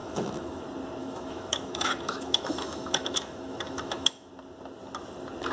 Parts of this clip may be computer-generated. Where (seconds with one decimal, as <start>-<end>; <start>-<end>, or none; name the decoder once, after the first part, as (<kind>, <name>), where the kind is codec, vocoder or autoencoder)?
0.0-0.6 (autoencoder, DAC-VAE); 1.0-4.3